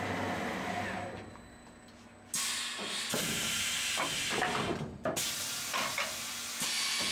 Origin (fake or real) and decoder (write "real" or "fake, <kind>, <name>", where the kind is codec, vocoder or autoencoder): real